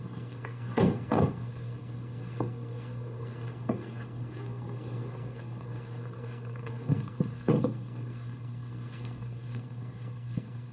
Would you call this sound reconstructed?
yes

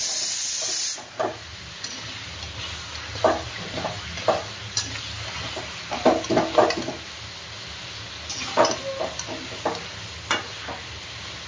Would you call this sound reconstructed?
no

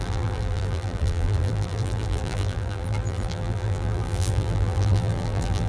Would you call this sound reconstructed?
yes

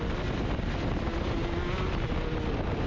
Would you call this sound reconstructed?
no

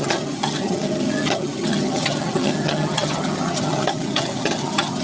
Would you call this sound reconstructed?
yes